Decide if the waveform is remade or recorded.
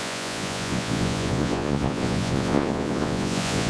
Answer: remade